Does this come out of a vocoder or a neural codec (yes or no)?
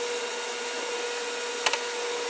no